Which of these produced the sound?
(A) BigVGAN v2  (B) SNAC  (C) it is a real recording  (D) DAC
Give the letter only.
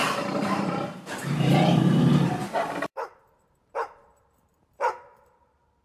A